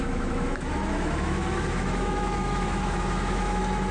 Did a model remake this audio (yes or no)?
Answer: yes